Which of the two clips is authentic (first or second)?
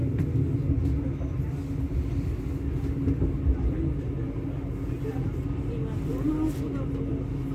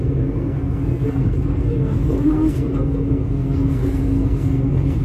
first